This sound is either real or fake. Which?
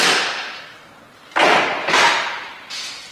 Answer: real